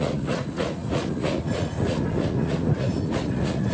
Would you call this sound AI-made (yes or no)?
yes